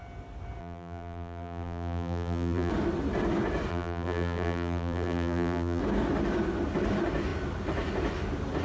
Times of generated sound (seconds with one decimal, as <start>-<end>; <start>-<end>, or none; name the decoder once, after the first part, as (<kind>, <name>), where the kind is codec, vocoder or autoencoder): 0.6-2.7 (vocoder, BigVGAN v2); 3.7-5.8